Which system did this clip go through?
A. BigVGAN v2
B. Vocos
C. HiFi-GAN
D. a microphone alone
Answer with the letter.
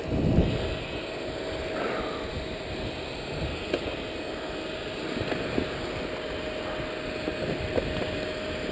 D